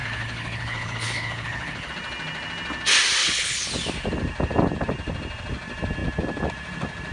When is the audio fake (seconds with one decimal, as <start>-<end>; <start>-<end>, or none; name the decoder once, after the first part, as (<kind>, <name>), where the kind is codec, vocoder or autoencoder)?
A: 0.0-1.9 (codec, HILCodec); 3.2-3.7